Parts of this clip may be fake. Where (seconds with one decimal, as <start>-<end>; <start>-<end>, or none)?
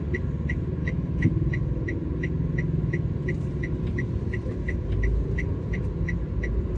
0.8-1.3